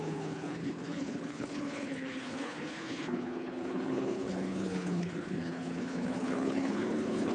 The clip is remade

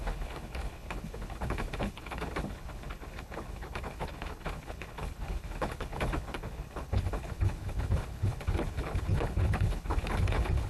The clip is remade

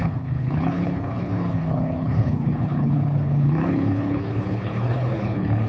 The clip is remade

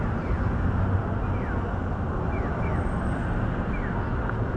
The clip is recorded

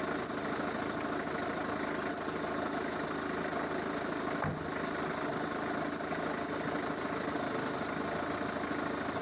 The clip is recorded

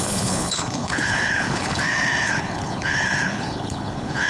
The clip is remade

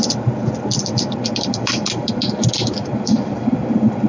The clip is recorded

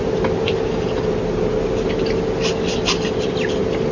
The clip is recorded